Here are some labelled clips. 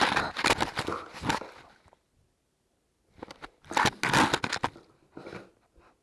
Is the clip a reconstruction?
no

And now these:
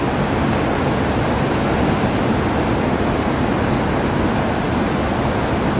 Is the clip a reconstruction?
no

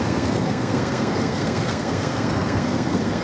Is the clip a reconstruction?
yes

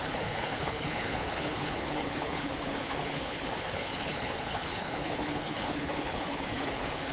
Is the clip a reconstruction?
yes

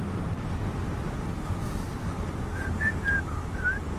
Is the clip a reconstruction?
no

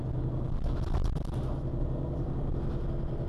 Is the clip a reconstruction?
no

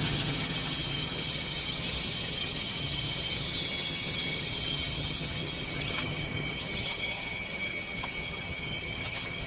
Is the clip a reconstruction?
yes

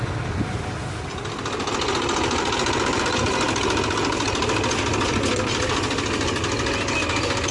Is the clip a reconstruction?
no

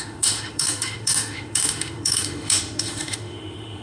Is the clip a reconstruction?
yes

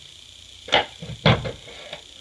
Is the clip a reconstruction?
no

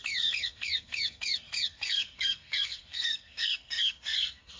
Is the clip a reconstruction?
yes